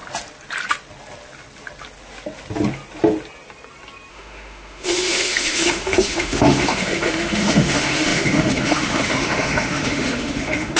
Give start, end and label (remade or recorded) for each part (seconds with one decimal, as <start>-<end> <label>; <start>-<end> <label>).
0.0-4.1 recorded; 4.1-10.8 remade

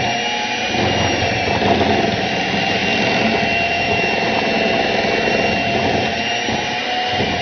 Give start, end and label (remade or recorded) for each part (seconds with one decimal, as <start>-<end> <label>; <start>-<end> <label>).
0.0-7.4 recorded

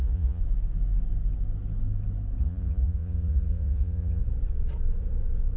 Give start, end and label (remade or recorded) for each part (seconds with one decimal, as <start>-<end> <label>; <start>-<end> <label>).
0.0-0.4 remade; 0.4-2.4 recorded; 2.4-4.2 remade; 4.2-5.6 recorded

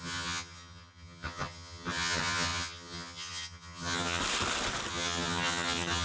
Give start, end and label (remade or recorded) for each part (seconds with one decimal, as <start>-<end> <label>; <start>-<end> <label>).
0.0-4.2 remade; 4.2-4.9 recorded; 4.9-6.0 remade

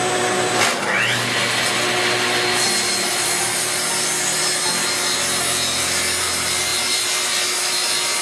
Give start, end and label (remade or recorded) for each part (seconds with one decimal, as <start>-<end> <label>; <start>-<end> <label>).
0.0-8.2 recorded

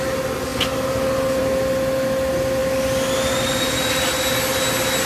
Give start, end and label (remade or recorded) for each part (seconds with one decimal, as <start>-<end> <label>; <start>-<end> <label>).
0.0-5.1 recorded